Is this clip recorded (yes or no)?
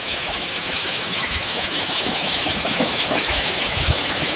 no